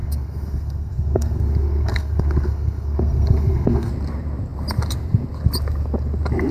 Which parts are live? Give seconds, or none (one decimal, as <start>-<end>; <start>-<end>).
3.9-6.5